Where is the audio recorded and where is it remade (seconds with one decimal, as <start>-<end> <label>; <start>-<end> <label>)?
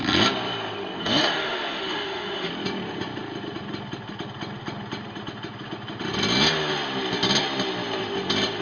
0.0-1.0 recorded; 1.0-2.5 remade; 2.5-8.6 recorded